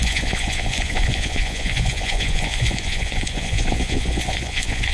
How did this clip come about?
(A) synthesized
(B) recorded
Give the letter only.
A